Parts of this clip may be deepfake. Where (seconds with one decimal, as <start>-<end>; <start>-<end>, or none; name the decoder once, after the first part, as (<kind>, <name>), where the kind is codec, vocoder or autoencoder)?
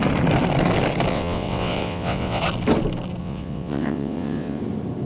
1.1-2.4 (vocoder, WaveNeXt); 3.2-4.6